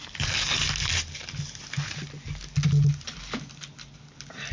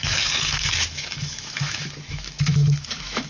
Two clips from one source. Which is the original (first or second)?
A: first